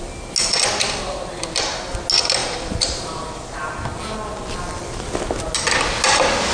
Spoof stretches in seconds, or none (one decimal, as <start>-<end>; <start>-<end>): none